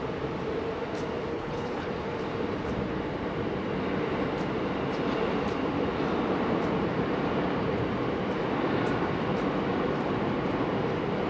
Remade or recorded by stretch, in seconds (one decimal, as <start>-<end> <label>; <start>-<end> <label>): 0.0-1.3 recorded; 1.3-1.9 remade; 1.9-11.3 recorded